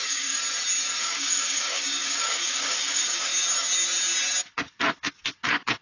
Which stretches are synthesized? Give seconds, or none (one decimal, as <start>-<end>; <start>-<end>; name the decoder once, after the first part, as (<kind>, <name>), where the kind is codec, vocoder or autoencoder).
0.0-0.4 (codec, DAC); 1.0-3.3